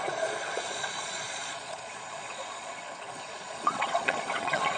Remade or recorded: remade